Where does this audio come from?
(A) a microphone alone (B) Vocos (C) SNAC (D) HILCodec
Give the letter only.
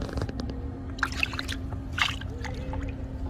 A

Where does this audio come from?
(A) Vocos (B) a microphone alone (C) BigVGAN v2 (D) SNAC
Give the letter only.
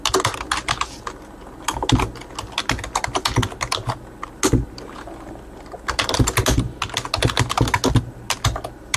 B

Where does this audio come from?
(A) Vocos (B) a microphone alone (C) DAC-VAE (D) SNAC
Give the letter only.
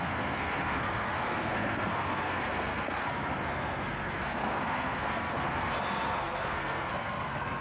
D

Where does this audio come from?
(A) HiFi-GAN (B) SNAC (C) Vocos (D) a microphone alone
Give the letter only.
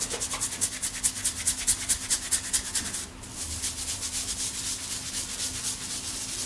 D